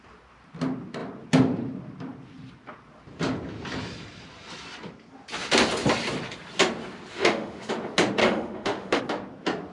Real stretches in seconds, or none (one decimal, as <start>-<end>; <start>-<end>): 0.0-7.1; 7.7-8.2; 9.0-9.7